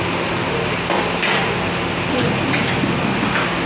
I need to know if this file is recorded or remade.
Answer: recorded